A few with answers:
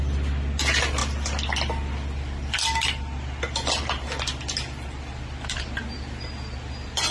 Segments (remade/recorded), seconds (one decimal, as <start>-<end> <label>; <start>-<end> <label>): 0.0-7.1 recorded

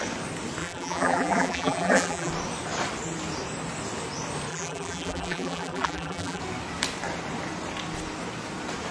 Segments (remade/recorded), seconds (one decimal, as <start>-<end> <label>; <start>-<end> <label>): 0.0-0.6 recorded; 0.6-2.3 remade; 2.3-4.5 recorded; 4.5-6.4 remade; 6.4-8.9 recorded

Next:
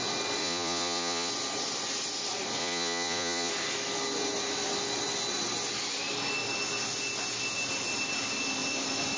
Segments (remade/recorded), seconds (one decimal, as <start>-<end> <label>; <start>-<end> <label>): 0.0-0.4 recorded; 0.4-1.3 remade; 1.3-2.6 recorded; 2.6-3.5 remade; 3.5-9.2 recorded

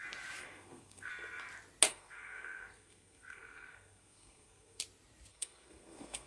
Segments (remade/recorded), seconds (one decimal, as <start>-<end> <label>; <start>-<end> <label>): 0.0-0.4 recorded; 0.4-1.1 remade; 1.1-1.9 recorded; 1.9-4.8 remade; 4.8-5.3 recorded; 5.3-6.3 remade

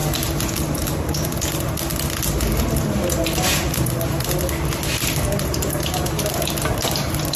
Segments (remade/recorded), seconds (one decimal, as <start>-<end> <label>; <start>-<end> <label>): 0.0-0.5 recorded; 0.5-1.9 remade; 1.9-6.3 recorded; 6.3-7.4 remade

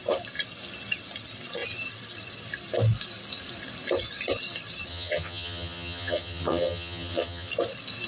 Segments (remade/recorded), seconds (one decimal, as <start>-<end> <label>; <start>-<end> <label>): 0.0-4.9 recorded; 4.9-7.5 remade; 7.5-8.1 recorded

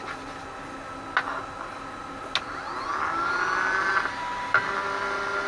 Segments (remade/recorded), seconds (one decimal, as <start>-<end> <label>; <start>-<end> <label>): 0.0-5.5 recorded

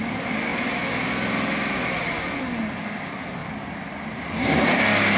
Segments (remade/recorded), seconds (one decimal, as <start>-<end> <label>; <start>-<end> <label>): 0.0-5.2 recorded